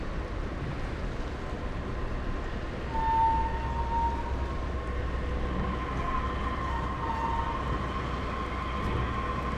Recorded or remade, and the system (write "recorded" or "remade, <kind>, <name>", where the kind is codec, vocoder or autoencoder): recorded